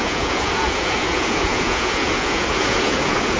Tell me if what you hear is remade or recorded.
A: remade